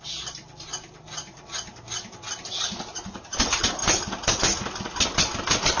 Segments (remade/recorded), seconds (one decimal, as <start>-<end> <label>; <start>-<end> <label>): 0.0-5.8 recorded